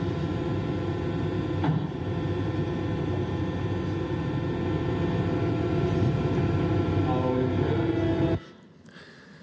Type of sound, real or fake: real